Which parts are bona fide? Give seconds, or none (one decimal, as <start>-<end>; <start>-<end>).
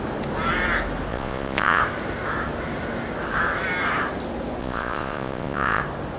0.0-1.1; 1.8-4.6; 5.8-6.2